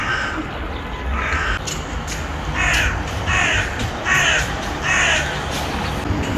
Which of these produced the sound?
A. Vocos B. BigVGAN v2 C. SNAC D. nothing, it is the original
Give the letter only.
D